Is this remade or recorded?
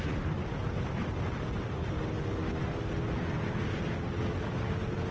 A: recorded